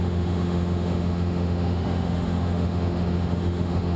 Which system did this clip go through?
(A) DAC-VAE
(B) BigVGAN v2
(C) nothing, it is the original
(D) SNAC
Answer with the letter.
A